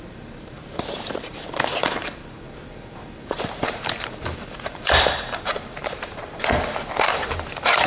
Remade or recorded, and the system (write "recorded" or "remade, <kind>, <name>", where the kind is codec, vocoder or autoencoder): remade, vocoder, BigVGAN v2